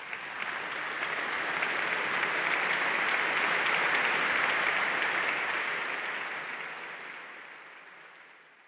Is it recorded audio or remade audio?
recorded